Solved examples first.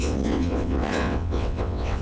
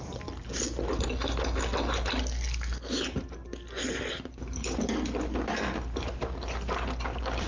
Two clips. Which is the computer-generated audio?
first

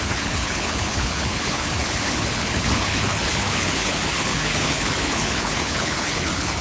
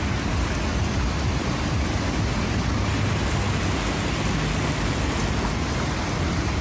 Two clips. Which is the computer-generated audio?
first